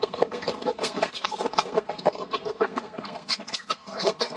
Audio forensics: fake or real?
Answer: fake